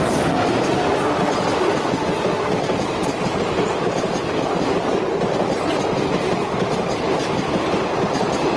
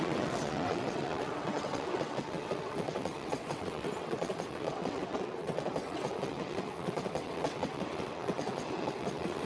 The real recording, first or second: first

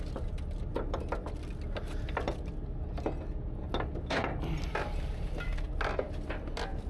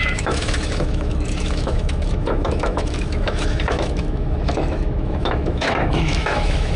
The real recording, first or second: first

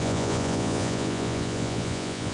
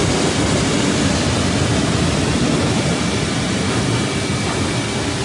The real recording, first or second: second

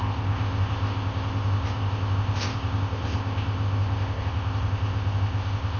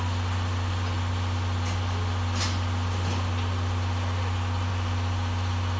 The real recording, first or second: second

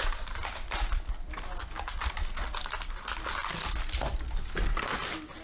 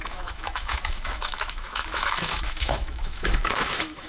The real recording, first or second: first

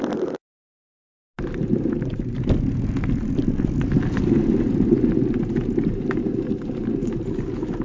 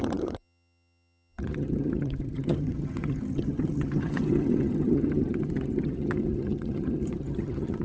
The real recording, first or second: first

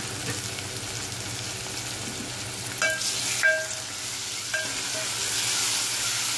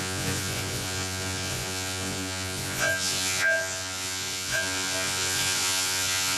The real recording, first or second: first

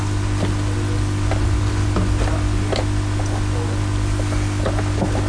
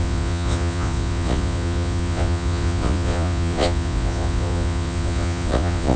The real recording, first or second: first